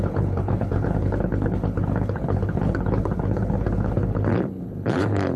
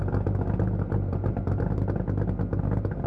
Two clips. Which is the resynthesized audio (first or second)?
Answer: first